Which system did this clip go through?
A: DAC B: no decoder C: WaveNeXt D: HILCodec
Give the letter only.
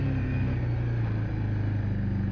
B